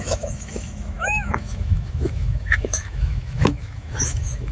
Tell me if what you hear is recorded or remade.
remade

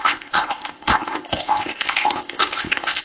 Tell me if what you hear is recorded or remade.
remade